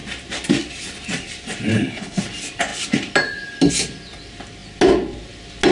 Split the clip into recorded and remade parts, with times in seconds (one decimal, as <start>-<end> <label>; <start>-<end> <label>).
0.0-1.7 recorded; 1.7-2.2 remade; 2.2-5.7 recorded